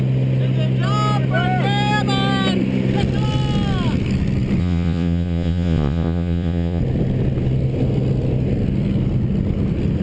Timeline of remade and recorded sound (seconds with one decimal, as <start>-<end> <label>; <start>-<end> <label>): 0.0-4.6 recorded; 4.6-6.8 remade; 6.8-10.0 recorded